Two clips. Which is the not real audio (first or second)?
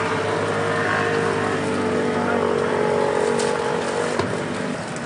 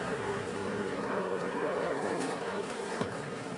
second